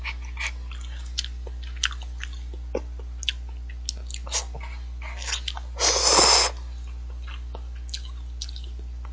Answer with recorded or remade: recorded